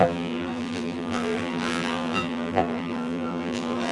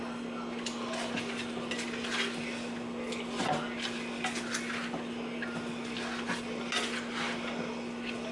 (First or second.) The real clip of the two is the second